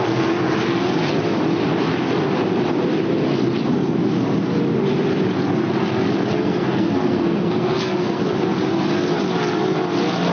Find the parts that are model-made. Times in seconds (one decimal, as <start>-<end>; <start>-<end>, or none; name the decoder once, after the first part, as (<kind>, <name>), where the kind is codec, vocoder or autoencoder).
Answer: 6.3-8.2 (codec, SNAC)